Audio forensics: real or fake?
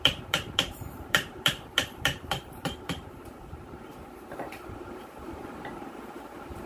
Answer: fake